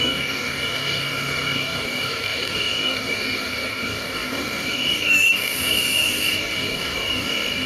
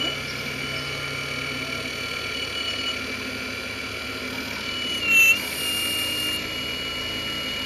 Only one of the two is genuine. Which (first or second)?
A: second